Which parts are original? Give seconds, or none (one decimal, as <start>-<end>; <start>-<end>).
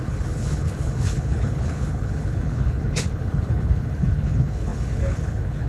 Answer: none